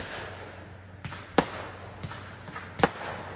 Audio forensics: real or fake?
real